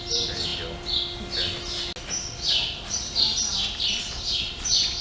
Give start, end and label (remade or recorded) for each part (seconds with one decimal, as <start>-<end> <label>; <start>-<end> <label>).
0.0-5.0 recorded